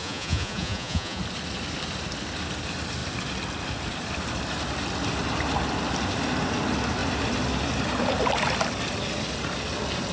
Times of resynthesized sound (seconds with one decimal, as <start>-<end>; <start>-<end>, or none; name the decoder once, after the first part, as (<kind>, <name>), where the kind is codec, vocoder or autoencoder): 0.0-1.2 (vocoder, Vocos)